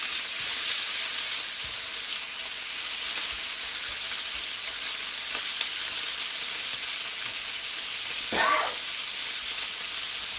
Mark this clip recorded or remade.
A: recorded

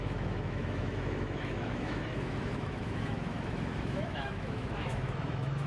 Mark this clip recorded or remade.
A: remade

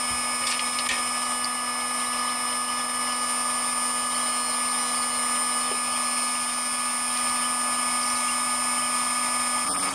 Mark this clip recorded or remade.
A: recorded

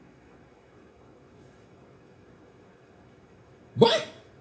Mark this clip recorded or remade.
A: remade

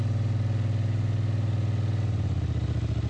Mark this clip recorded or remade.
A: recorded